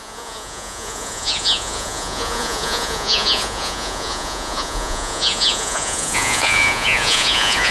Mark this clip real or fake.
fake